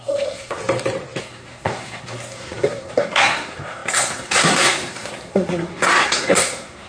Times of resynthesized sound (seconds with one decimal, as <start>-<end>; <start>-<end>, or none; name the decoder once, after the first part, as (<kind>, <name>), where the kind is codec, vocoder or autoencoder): 0.0-0.6 (codec, SNAC); 1.2-6.9